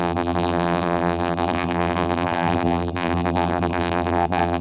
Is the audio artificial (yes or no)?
yes